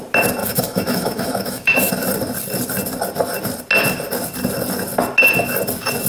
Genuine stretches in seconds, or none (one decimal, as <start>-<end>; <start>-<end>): 0.0-0.4; 1.9-6.1